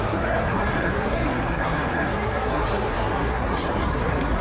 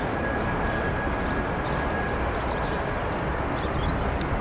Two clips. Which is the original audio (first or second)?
second